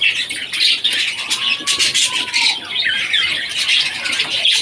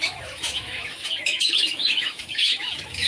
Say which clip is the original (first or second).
first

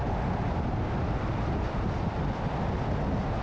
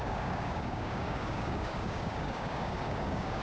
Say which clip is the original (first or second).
first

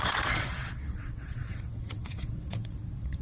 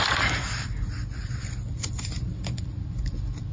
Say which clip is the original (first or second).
second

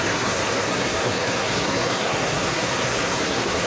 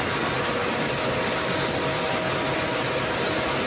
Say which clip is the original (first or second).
second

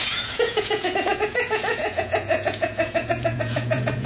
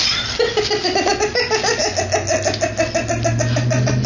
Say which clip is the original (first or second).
second